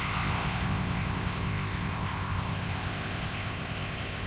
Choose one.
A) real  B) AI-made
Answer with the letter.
B